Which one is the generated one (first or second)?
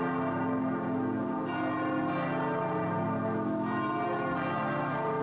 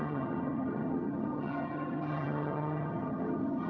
second